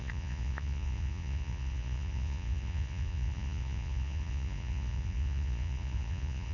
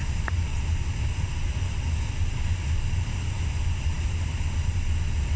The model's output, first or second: first